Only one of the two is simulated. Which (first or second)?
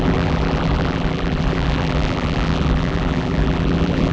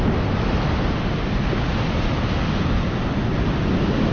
first